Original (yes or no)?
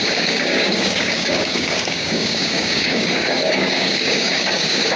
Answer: no